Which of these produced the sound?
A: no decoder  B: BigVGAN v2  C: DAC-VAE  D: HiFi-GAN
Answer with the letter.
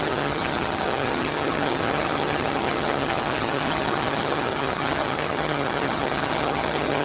D